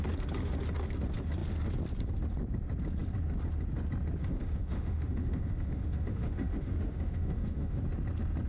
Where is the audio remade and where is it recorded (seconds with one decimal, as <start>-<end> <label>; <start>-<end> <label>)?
0.0-4.2 recorded; 4.2-7.8 remade; 7.8-8.5 recorded